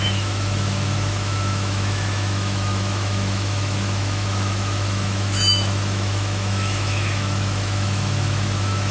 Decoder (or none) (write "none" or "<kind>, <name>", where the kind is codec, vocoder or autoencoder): autoencoder, DAC-VAE